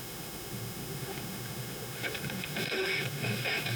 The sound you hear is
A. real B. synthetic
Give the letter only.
B